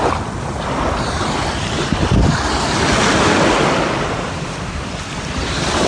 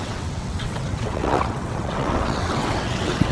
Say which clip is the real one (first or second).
first